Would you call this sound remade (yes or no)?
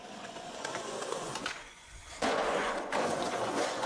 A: yes